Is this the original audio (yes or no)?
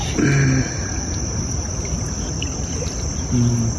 yes